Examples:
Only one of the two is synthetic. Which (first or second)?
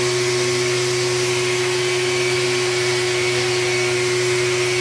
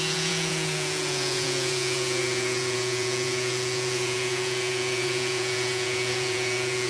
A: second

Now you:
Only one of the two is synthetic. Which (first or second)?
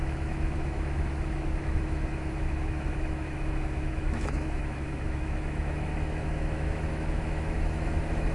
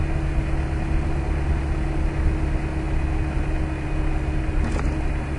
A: first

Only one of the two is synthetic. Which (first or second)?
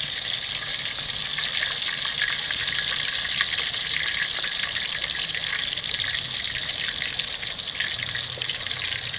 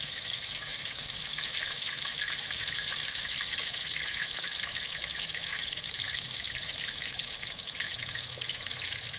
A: second